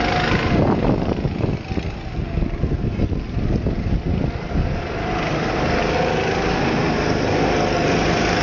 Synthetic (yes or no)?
no